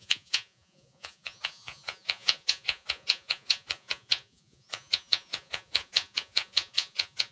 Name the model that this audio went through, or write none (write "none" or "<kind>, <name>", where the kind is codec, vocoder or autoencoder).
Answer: vocoder, Vocos